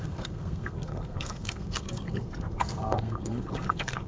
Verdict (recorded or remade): remade